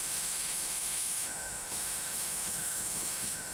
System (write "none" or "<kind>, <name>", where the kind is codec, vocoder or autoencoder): autoencoder, DAC-VAE